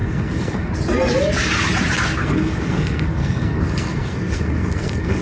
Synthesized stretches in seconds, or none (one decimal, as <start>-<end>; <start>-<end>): 0.0-0.7; 2.2-5.2